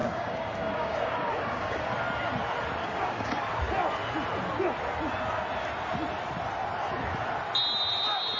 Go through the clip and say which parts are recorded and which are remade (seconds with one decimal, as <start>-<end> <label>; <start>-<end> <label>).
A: 0.0-1.9 remade; 1.9-2.8 recorded; 2.8-3.4 remade; 3.4-8.4 recorded